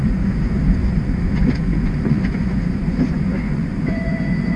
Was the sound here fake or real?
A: fake